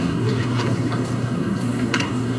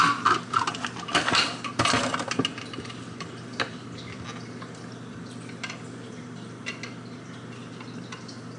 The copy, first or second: first